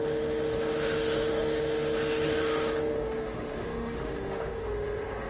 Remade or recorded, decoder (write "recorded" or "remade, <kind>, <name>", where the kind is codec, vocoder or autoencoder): remade, autoencoder, DAC-VAE